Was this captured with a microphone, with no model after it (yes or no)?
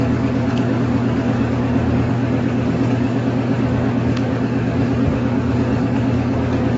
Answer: no